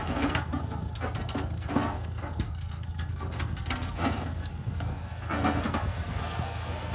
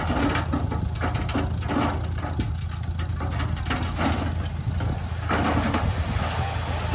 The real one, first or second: second